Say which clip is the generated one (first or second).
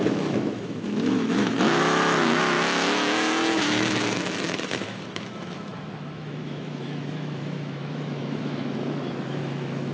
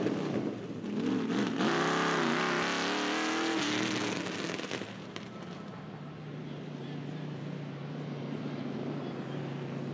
first